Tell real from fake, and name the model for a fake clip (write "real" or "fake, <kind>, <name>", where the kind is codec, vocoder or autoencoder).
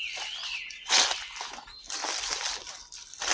real